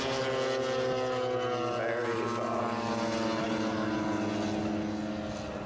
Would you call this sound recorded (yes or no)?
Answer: yes